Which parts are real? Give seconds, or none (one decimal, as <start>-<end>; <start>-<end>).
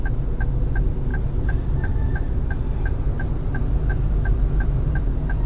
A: 0.0-1.1; 1.9-3.9; 5.0-5.5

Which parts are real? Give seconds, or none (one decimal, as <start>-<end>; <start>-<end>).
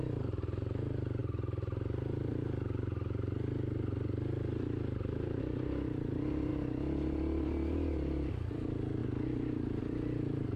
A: 0.0-10.6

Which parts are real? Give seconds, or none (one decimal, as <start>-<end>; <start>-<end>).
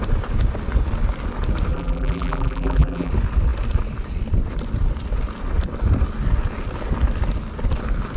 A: 0.0-1.7; 3.1-8.2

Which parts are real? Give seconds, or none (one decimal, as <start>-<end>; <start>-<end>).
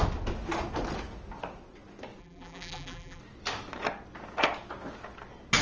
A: 0.0-2.2; 3.2-5.6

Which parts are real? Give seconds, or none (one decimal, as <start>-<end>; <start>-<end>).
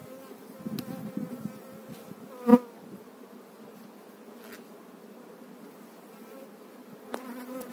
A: 0.0-7.7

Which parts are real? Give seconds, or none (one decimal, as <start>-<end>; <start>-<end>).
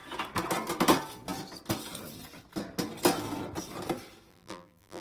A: 0.0-4.3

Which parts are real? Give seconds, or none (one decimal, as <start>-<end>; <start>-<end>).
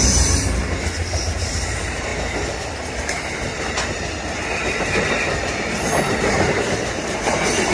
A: 2.1-6.0